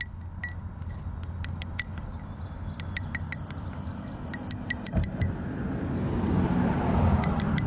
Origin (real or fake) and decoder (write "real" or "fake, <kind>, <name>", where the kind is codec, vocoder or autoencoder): real